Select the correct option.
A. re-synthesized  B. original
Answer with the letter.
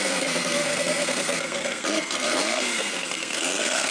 A